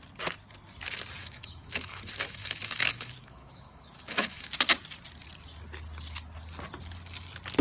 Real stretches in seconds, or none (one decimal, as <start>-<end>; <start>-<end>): 0.0-1.2; 4.5-7.6